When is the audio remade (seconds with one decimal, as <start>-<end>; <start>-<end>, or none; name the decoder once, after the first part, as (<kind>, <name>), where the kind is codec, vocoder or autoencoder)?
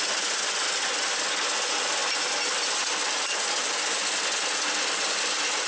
none